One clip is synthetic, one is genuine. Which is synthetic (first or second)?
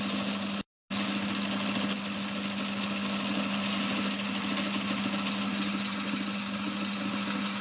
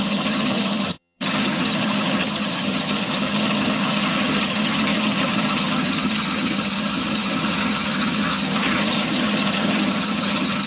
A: second